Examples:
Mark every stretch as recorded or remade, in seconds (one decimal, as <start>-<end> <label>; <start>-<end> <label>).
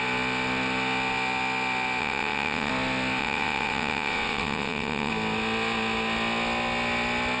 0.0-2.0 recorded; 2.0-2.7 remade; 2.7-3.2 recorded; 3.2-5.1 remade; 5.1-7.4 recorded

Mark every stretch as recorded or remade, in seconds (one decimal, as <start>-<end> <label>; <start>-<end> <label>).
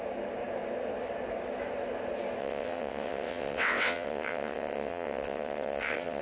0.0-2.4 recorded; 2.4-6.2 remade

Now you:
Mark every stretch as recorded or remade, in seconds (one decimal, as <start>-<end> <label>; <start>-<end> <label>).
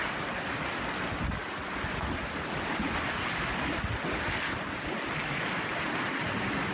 0.0-6.7 recorded